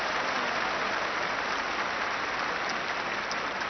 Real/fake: real